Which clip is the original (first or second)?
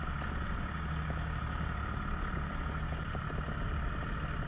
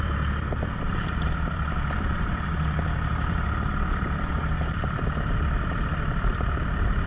first